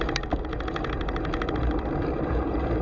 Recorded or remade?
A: remade